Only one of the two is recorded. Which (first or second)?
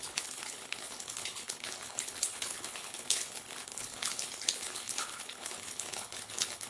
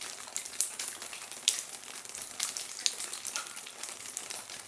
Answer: second